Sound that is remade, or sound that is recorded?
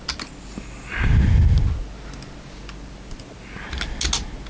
recorded